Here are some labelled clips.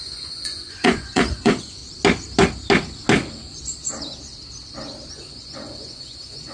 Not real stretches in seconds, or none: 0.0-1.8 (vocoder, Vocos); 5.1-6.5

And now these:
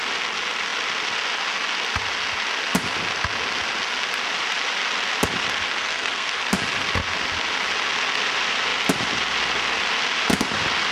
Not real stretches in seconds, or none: 5.8-6.4 (codec, SNAC)